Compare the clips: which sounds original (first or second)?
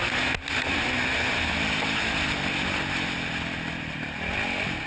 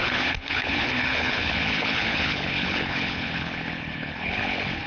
first